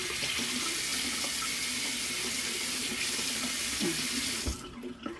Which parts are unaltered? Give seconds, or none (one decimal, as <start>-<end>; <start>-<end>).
0.0-5.2

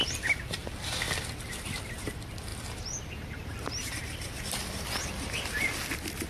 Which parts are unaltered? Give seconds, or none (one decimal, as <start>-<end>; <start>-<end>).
0.0-6.3

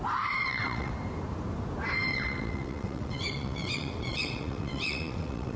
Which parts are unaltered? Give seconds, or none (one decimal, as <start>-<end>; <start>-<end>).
0.0-0.4; 0.9-2.1

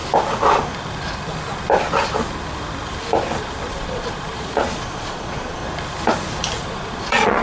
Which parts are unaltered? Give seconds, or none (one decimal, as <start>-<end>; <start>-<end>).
0.0-3.7; 5.6-6.6

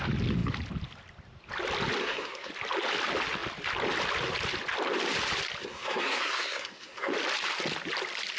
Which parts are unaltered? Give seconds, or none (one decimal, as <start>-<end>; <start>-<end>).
0.0-2.0; 2.5-5.6; 7.1-8.4

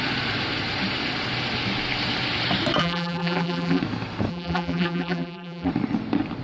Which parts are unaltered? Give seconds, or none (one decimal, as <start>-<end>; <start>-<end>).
0.0-2.8; 3.8-4.3; 5.7-6.4

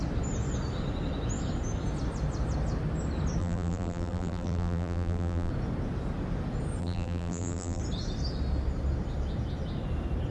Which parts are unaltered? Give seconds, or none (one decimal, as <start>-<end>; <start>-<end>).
0.0-3.4; 5.5-6.8; 7.8-10.3

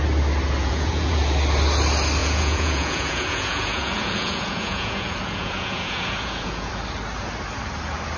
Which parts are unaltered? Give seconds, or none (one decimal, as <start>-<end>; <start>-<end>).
0.0-0.6; 1.2-2.2; 6.7-8.2